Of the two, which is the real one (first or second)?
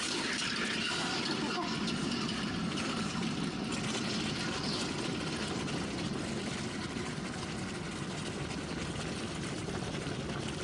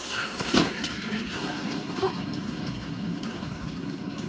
first